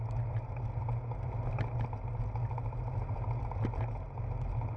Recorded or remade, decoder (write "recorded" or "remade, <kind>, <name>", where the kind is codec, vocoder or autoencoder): recorded